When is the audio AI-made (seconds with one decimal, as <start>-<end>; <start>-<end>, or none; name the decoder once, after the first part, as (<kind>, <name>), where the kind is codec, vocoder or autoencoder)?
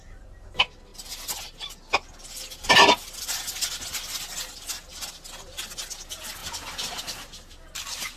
none